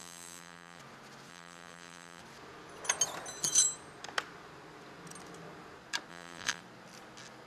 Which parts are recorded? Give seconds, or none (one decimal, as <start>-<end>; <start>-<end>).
0.8-1.3; 2.2-6.1; 6.6-7.5